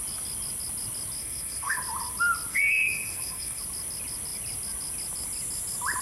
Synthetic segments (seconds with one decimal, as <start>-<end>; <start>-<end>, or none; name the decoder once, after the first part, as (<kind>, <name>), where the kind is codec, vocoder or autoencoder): 1.2-1.8 (codec, SNAC); 2.5-3.6